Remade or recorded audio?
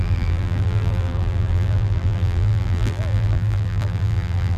remade